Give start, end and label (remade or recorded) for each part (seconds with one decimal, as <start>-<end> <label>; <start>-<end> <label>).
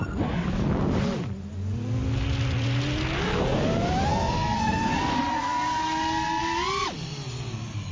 0.0-4.1 recorded; 4.1-4.9 remade; 4.9-7.9 recorded